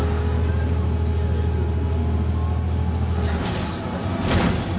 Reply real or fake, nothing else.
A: real